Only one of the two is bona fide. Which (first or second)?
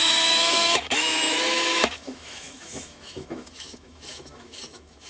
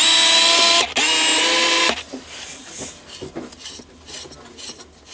second